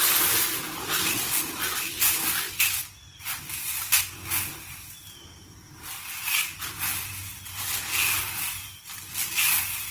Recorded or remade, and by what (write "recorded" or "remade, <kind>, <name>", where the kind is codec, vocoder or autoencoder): recorded